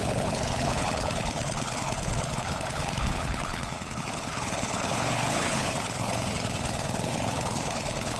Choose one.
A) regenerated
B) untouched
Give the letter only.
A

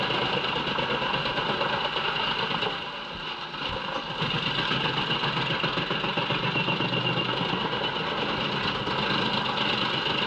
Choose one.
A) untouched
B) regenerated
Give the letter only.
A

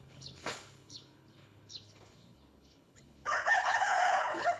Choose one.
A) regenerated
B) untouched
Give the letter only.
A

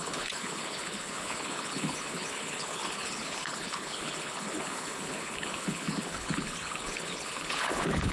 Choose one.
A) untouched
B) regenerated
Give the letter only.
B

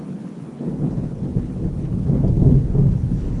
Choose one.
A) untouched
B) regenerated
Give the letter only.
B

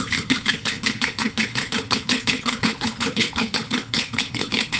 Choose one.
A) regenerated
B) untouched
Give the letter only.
A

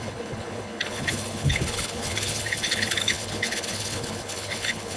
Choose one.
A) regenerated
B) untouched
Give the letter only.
A